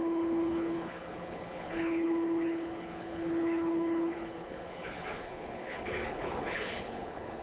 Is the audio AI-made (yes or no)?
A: yes